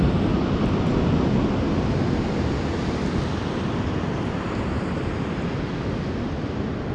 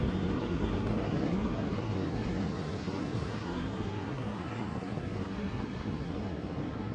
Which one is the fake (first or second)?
second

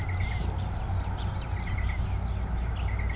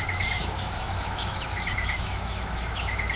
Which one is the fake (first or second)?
second